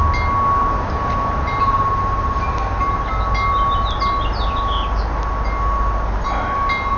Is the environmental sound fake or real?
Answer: real